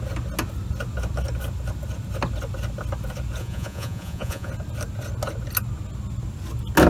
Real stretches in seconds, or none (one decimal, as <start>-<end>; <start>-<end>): 0.0-3.4; 4.5-6.9